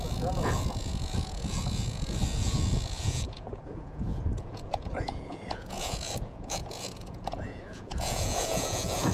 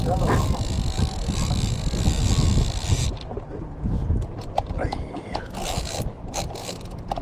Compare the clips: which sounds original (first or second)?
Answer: second